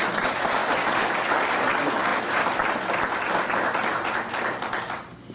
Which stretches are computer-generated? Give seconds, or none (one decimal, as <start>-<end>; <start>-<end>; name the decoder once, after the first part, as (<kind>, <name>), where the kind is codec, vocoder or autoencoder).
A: 0.6-1.5 (vocoder, BigVGAN v2); 2.1-3.5